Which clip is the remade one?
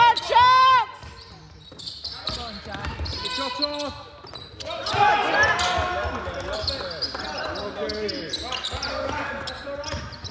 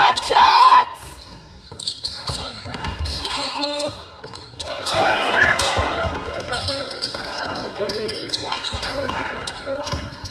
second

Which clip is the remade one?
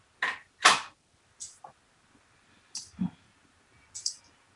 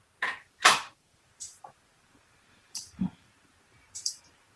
second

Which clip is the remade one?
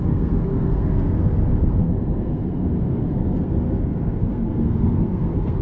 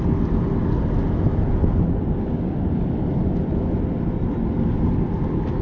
first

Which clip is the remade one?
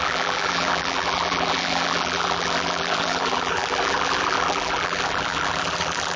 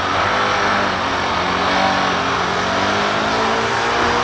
first